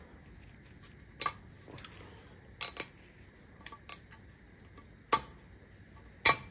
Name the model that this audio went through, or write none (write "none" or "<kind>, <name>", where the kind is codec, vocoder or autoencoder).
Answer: none